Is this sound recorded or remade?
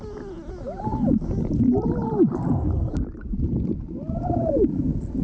recorded